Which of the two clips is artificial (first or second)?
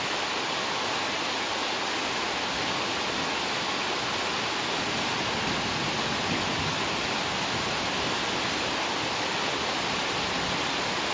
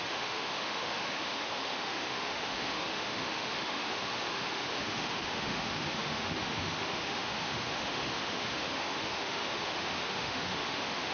second